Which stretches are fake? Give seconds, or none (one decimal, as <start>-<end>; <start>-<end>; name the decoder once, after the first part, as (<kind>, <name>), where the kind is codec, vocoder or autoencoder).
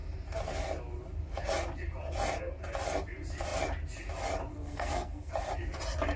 4.5-5.3 (codec, SNAC)